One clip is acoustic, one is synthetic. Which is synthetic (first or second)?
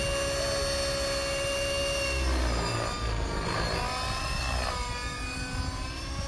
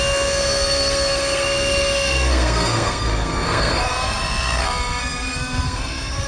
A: second